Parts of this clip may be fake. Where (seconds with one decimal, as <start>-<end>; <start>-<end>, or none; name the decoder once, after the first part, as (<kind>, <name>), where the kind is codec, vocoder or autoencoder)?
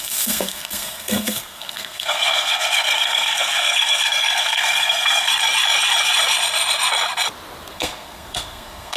0.0-5.3 (codec, SNAC); 7.7-9.0